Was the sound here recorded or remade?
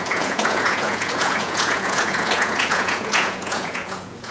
remade